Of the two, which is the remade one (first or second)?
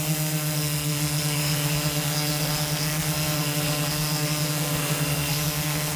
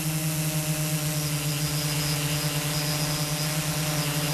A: first